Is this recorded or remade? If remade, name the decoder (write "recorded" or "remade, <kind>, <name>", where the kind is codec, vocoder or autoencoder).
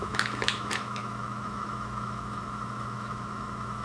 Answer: remade, autoencoder, DAC-VAE